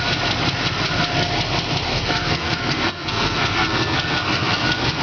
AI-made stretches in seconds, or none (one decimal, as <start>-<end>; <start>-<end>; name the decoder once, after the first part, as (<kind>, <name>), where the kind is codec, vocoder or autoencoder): 1.9-5.0 (codec, SNAC)